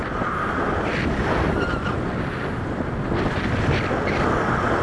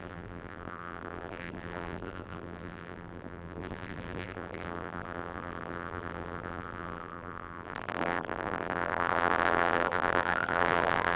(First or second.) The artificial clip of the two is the second